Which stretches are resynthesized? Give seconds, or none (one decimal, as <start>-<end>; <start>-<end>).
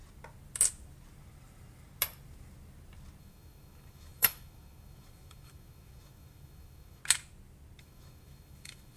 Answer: 3.2-7.0; 7.8-9.0